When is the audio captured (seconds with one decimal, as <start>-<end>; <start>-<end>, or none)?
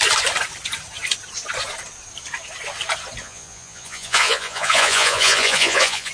0.0-3.2